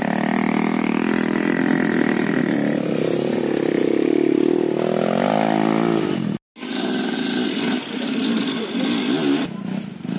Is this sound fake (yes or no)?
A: no